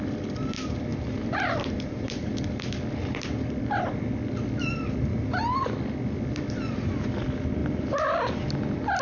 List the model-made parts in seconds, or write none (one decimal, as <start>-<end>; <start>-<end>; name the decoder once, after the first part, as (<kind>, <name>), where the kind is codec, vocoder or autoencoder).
0.9-2.3 (vocoder, BigVGAN v2); 5.1-5.6; 7.6-8.2

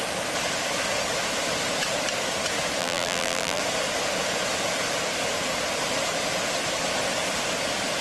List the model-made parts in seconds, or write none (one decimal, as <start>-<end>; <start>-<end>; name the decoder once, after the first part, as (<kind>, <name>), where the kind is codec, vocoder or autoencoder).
2.8-3.6 (vocoder, BigVGAN v2)

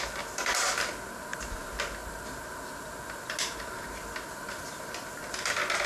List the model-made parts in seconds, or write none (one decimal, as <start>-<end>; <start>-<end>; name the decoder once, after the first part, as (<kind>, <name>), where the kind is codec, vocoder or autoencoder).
none

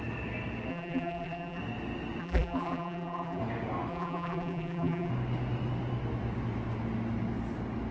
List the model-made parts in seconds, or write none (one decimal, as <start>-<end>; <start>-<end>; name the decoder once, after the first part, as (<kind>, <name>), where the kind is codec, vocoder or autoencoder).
0.7-1.6 (vocoder, BigVGAN v2); 2.2-3.4; 3.9-5.1